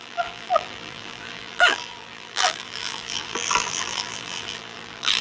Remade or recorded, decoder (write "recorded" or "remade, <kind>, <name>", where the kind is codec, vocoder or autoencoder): remade, vocoder, BigVGAN v2